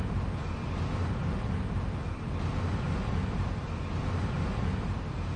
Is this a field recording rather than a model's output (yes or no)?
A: yes